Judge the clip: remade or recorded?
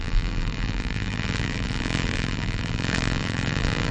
remade